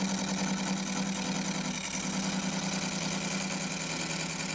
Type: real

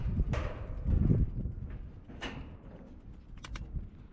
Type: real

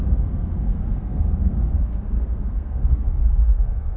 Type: fake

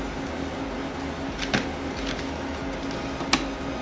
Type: real